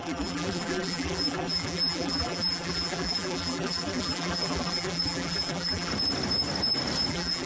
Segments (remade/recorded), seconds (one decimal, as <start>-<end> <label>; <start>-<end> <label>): 0.0-5.9 remade; 5.9-7.1 recorded; 7.1-7.5 remade